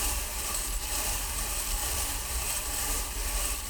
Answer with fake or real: fake